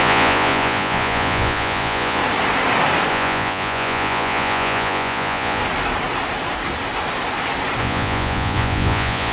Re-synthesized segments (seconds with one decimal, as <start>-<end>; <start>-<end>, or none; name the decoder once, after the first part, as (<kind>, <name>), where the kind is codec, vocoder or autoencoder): 0.0-2.2 (vocoder, Vocos); 3.1-5.6; 7.8-9.3